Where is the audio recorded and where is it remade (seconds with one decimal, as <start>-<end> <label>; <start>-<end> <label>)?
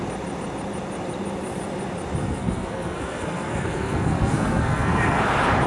0.0-2.2 recorded; 2.2-5.2 remade; 5.2-5.7 recorded